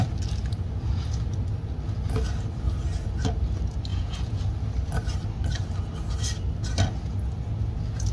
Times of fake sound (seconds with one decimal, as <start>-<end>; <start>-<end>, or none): 3.9-4.4